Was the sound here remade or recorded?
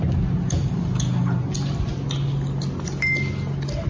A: recorded